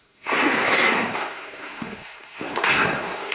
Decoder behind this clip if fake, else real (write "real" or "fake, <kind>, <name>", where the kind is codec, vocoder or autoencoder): fake, codec, SNAC